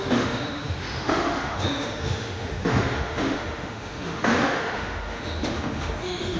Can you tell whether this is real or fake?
fake